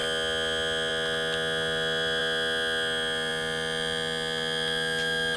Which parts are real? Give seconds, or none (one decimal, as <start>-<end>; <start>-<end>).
0.0-5.4